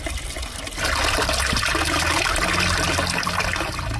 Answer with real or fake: real